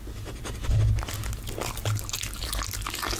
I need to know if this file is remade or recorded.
recorded